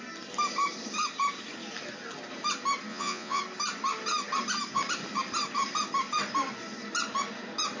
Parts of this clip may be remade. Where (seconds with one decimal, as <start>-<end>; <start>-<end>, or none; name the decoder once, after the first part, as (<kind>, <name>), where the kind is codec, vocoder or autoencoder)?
2.9-3.4 (vocoder, Vocos)